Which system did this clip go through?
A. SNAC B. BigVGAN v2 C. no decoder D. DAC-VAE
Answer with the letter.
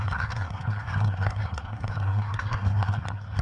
A